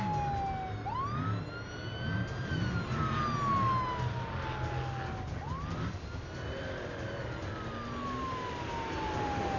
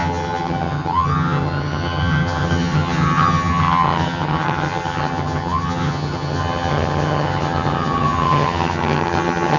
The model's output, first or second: second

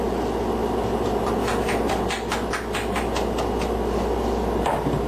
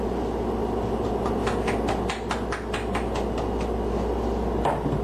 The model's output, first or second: second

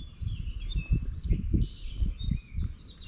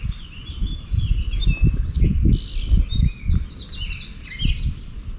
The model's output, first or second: first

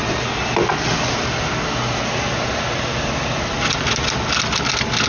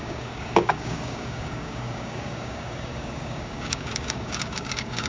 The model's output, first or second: second